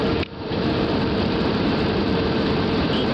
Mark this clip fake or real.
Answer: fake